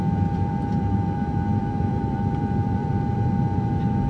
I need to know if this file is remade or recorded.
remade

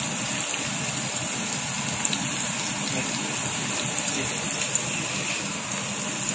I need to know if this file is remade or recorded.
recorded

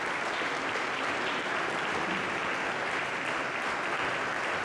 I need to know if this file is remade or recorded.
recorded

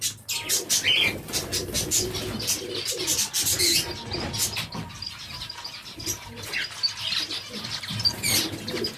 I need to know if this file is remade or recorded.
recorded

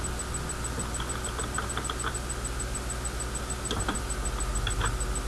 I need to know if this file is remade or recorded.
recorded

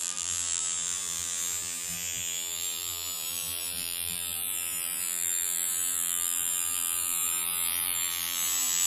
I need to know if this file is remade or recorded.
remade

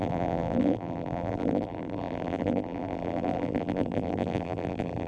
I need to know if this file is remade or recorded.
remade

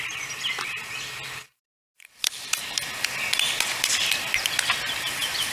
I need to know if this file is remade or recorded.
remade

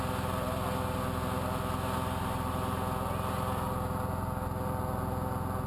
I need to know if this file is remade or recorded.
recorded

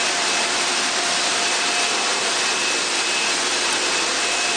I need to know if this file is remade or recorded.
remade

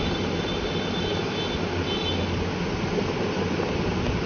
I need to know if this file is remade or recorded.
recorded